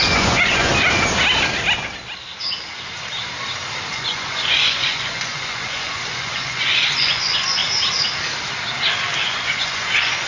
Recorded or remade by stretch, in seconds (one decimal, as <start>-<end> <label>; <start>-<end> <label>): 0.0-0.7 remade; 0.7-3.9 recorded; 3.9-7.6 remade; 7.6-9.2 recorded; 9.2-10.3 remade

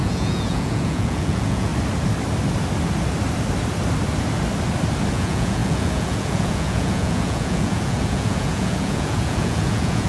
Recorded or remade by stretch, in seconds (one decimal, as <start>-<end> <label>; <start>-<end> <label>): 0.0-1.7 remade; 1.7-5.1 recorded; 5.1-10.1 remade

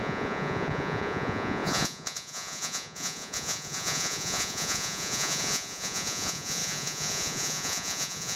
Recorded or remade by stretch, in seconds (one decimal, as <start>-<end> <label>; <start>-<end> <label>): 0.0-8.4 remade

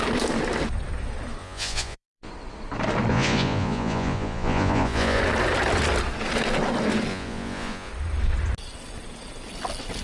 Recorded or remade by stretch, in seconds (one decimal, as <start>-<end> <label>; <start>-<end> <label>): 0.0-1.4 recorded; 1.4-2.3 remade; 2.3-3.1 recorded; 3.1-5.2 remade; 5.2-7.1 recorded; 7.1-7.9 remade; 7.9-10.0 recorded